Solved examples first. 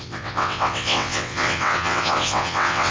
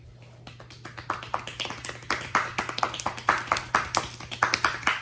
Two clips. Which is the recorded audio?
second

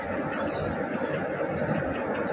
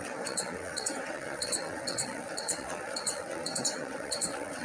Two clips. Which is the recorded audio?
first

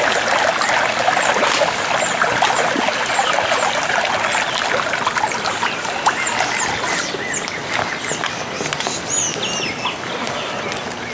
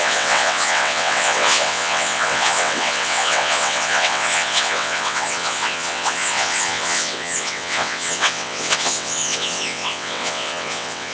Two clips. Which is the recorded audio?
first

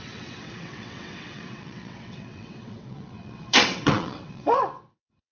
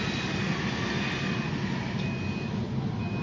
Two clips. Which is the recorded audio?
second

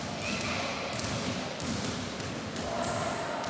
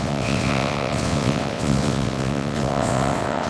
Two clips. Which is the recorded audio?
first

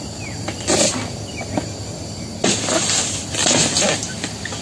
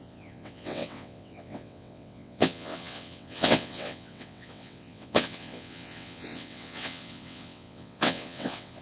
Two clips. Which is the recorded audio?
first